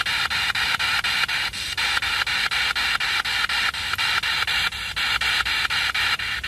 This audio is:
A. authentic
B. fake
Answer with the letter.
A